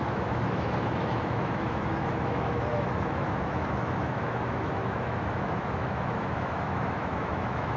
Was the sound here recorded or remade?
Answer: remade